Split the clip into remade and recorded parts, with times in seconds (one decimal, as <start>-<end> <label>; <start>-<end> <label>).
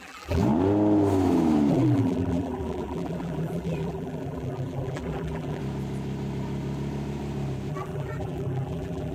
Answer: 0.0-0.4 remade; 0.4-1.7 recorded; 1.7-5.6 remade; 5.6-7.7 recorded; 7.7-9.1 remade